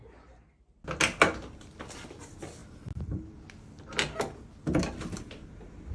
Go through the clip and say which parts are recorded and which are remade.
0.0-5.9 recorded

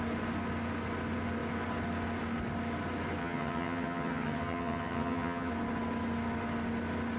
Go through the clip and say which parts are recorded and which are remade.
0.0-3.2 recorded; 3.2-5.5 remade; 5.5-7.2 recorded

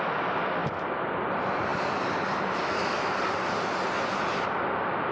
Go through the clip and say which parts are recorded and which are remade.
0.0-5.1 recorded

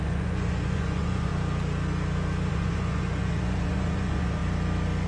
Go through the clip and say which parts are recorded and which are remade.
0.0-1.3 remade; 1.3-2.5 recorded; 2.5-4.4 remade; 4.4-5.1 recorded

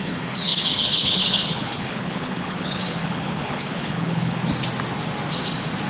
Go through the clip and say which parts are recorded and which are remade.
0.0-4.4 remade; 4.4-5.9 recorded

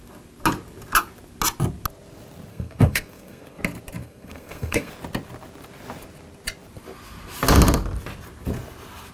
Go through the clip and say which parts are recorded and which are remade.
0.0-2.5 recorded; 2.5-3.6 remade; 3.6-4.0 recorded; 4.0-4.9 remade; 4.9-9.1 recorded

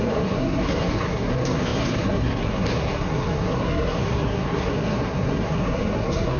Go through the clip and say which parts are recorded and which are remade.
0.0-6.4 remade

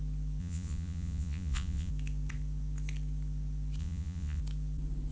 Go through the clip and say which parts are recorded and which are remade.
0.0-0.4 recorded; 0.4-1.9 remade; 1.9-3.8 recorded; 3.8-4.4 remade; 4.4-5.1 recorded